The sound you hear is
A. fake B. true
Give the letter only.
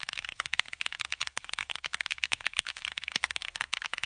A